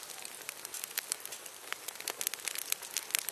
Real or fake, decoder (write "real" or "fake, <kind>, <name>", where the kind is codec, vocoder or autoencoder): real